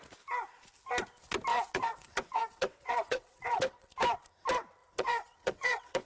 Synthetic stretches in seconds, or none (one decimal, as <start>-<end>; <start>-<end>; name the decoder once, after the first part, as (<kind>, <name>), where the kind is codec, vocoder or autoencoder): 1.5-3.9 (vocoder, WaveNeXt); 4.8-6.1